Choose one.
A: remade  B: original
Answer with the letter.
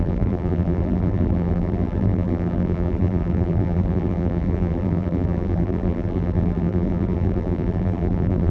A